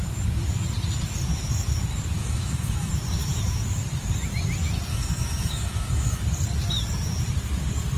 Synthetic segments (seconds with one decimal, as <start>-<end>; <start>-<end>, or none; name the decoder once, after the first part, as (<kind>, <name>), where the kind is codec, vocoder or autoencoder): 2.2-2.9 (autoencoder, DAC-VAE); 4.9-6.2